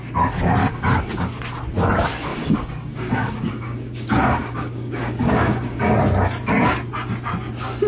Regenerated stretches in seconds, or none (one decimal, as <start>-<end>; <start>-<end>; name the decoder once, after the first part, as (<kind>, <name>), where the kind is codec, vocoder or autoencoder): 0.6-1.4 (codec, DAC); 2.3-5.9